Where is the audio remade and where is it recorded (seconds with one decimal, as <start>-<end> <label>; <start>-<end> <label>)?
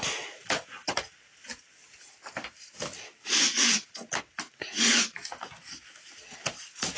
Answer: 0.0-7.0 recorded